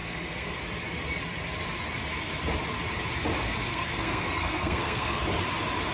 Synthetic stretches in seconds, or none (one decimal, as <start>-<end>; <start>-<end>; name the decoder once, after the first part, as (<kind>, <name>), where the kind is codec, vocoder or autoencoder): 0.0-0.6 (codec, SNAC); 3.7-5.2